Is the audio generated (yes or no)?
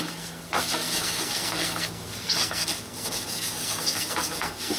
yes